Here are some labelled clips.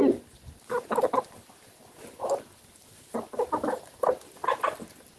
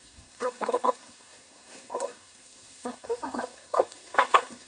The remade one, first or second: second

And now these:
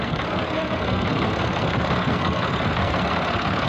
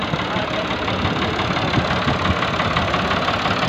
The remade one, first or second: first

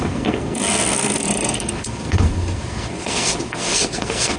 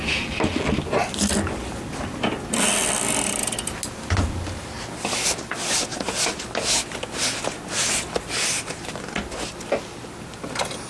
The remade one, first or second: first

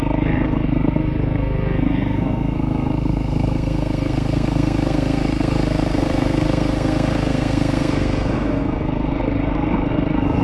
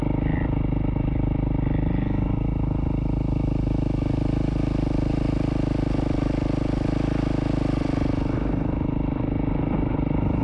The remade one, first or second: first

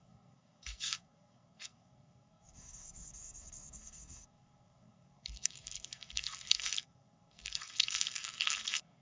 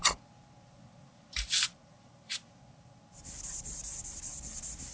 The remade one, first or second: first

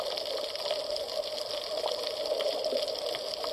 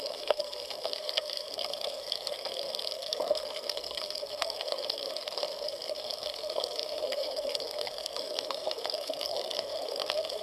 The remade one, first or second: second